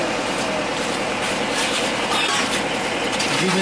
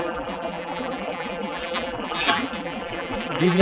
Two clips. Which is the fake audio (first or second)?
second